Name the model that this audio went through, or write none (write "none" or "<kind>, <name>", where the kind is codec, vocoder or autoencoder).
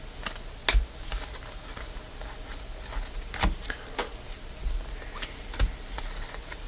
none